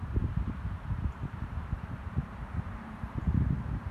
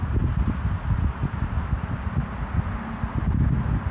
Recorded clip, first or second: second